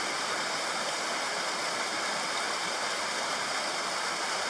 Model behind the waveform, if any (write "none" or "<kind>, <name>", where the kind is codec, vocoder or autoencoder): none